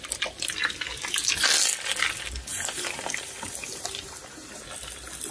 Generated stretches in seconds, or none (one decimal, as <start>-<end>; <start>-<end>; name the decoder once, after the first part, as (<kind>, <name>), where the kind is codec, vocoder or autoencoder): 2.5-4.6 (vocoder, BigVGAN v2)